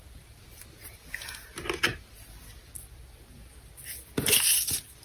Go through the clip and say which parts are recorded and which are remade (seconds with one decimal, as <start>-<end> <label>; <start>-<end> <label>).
0.0-5.0 recorded

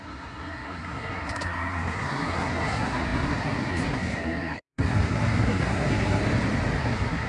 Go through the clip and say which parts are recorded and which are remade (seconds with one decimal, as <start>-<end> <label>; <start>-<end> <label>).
0.0-6.2 remade; 6.2-6.8 recorded; 6.8-7.3 remade